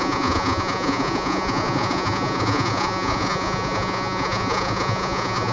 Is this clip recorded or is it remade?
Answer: remade